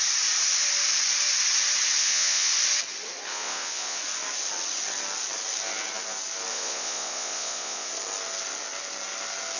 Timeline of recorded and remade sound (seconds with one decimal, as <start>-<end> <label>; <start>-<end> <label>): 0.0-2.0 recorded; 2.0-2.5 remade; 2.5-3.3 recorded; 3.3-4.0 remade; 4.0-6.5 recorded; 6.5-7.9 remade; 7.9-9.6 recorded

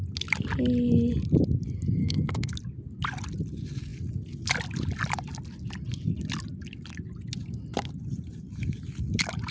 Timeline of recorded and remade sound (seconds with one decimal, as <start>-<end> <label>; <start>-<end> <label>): 0.0-2.0 recorded; 2.0-2.5 remade; 2.5-9.5 recorded

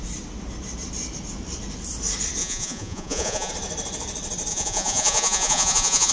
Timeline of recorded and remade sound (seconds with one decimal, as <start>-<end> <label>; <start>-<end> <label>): 0.0-2.4 recorded; 2.4-3.5 remade; 3.5-4.5 recorded; 4.5-6.1 remade

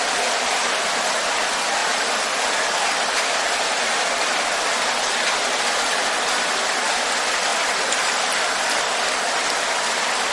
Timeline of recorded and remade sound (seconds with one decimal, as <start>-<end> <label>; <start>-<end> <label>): 0.0-1.8 recorded; 1.8-2.4 remade; 2.4-7.5 recorded; 7.5-8.8 remade; 8.8-10.3 recorded

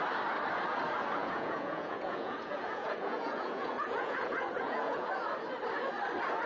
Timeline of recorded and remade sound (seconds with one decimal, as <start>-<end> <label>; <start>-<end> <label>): 0.0-1.2 recorded; 1.2-5.1 remade; 5.1-6.5 recorded

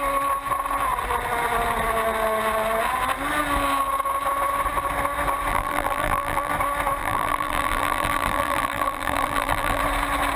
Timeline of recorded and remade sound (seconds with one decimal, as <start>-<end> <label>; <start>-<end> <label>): 0.0-5.5 recorded; 5.5-6.5 remade; 6.5-7.0 recorded; 7.0-9.8 remade; 9.8-10.4 recorded

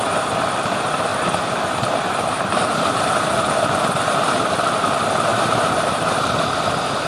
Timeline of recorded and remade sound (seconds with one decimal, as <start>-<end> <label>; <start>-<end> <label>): 0.0-1.1 recorded; 1.1-2.8 remade; 2.8-4.0 recorded; 4.0-4.8 remade; 4.8-5.3 recorded; 5.3-6.0 remade; 6.0-7.1 recorded